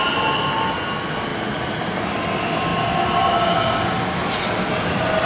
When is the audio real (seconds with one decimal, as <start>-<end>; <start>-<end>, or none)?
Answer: 0.0-5.3